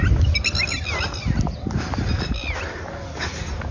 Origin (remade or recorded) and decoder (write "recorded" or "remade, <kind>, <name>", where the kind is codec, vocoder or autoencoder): recorded